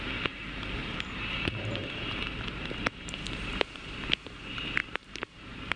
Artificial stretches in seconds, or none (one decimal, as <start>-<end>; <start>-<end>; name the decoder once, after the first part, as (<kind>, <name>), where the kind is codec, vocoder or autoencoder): 0.8-4.0 (vocoder, BigVGAN v2); 4.8-5.8